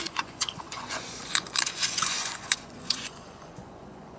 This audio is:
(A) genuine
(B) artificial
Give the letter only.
B